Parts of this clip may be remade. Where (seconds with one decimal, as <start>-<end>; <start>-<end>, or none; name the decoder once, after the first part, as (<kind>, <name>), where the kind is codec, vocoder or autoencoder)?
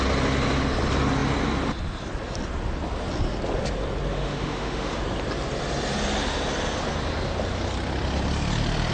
4.1-5.0 (autoencoder, DAC-VAE)